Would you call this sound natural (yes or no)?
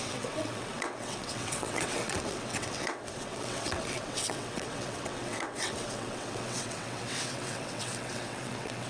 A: no